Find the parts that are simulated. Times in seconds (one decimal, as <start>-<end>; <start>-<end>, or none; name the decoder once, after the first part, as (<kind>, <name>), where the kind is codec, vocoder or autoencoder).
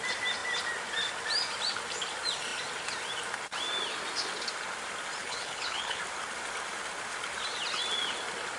5.2-6.0 (codec, HILCodec)